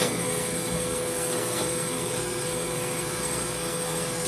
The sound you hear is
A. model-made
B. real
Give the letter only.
A